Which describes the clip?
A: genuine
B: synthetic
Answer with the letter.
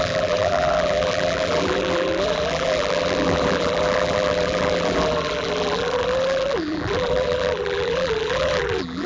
B